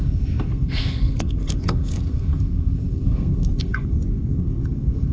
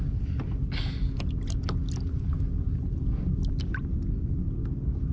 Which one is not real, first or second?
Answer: first